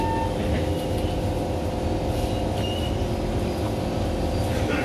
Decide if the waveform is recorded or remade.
recorded